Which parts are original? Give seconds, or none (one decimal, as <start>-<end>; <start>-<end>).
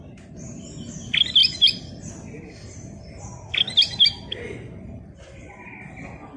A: 0.0-6.4